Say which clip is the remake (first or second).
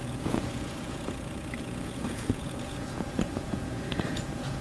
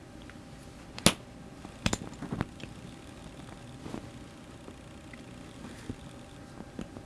first